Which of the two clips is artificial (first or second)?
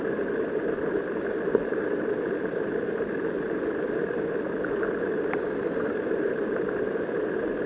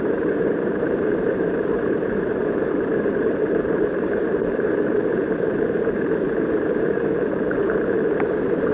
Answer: second